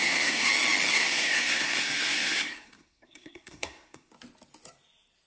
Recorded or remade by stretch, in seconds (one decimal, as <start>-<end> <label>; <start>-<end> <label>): 0.0-0.5 remade; 0.5-0.9 recorded; 0.9-4.1 remade; 4.1-5.3 recorded